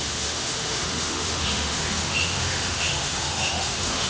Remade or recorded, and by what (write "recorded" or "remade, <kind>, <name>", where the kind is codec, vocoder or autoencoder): remade, autoencoder, DAC-VAE